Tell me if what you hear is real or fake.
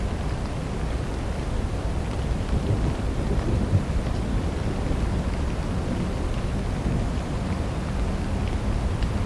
real